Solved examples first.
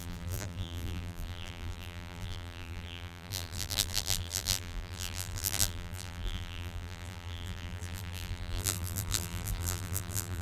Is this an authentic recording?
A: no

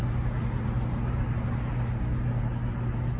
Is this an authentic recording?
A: yes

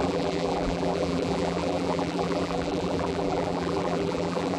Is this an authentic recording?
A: no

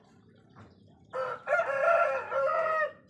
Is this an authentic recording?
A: yes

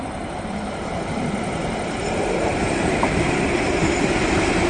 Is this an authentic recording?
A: yes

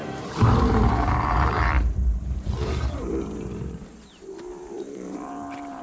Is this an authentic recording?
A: no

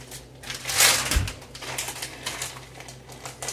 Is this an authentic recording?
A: yes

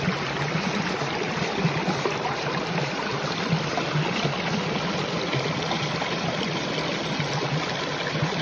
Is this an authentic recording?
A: yes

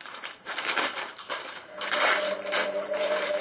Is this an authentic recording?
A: no